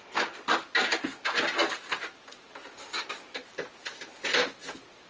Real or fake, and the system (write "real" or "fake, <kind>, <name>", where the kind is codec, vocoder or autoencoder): real